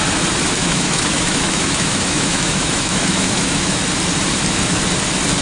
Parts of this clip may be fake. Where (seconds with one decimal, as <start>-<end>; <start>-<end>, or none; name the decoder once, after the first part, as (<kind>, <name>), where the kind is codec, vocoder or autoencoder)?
0.6-3.8 (autoencoder, DAC-VAE)